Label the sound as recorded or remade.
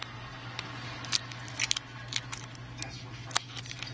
recorded